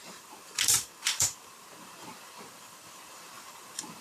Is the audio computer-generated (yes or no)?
yes